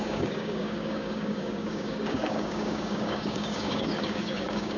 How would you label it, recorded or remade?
remade